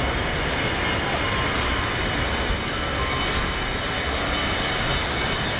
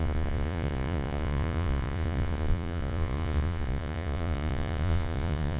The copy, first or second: second